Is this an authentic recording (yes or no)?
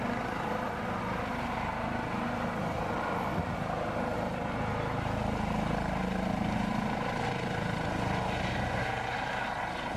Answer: yes